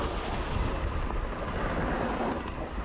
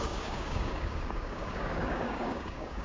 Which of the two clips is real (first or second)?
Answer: first